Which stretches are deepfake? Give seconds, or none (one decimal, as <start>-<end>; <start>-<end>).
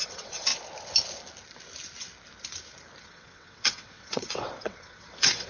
0.0-0.5; 3.0-5.5